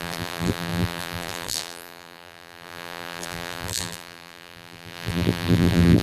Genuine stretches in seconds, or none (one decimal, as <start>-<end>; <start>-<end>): none